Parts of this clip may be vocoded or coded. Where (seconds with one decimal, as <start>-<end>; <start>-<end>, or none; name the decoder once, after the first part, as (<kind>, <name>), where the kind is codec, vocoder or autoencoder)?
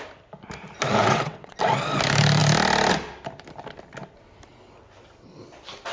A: 1.0-1.6 (vocoder, WaveNeXt)